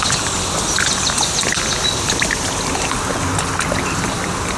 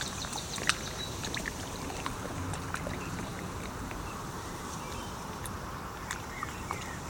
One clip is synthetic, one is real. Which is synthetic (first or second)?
second